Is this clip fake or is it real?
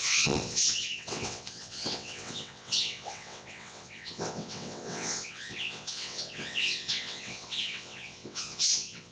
fake